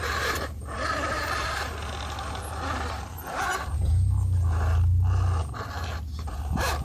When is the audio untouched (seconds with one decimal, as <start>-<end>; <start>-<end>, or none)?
1.8-2.4; 3.5-6.2